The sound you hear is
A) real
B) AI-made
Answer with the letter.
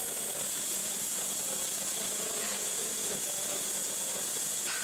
B